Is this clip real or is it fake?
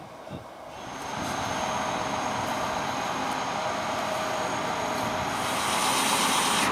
real